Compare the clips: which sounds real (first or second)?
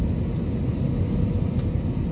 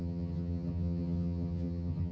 first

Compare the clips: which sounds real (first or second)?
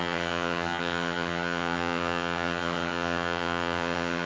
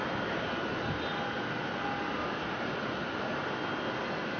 second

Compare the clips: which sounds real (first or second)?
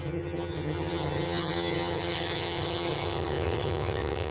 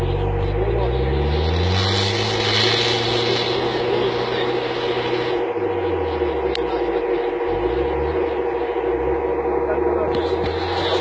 second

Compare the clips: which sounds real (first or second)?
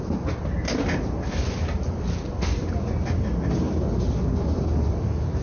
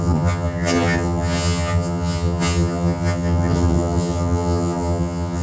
first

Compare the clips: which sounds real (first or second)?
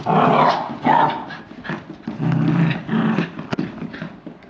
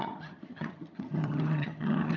first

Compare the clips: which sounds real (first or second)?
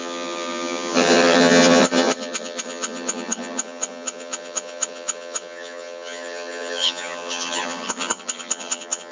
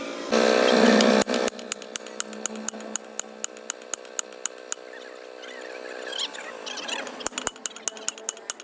second